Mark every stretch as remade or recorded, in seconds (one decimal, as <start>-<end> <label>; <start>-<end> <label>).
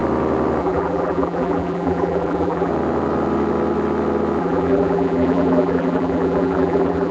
0.0-0.6 recorded; 0.6-2.7 remade; 2.7-4.4 recorded; 4.4-7.1 remade